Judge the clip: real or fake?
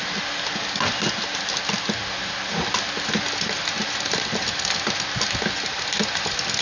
real